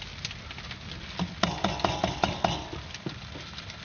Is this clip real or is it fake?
real